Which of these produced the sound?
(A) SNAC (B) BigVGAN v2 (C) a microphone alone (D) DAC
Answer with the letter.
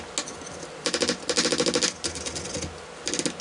C